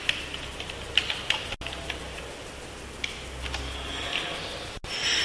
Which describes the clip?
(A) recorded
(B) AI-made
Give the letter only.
A